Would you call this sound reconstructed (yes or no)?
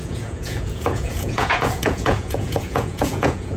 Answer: yes